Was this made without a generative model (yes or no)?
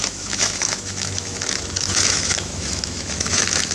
no